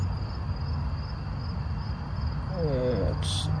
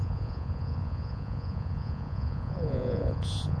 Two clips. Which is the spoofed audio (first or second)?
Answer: second